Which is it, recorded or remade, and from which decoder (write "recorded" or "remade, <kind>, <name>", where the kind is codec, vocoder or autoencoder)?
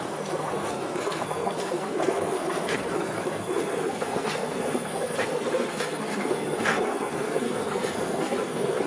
remade, codec, SNAC